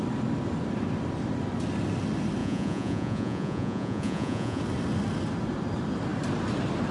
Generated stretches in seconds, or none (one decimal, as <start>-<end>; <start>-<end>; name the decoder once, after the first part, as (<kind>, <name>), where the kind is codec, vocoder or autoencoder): 2.4-4.6 (vocoder, Vocos)